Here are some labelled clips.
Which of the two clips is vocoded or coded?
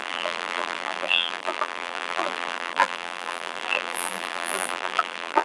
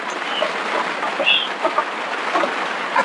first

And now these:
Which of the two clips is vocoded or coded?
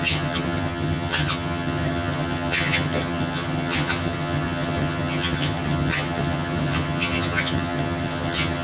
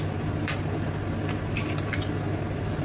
first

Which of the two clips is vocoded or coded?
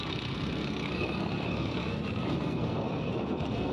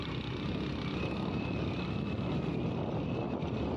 first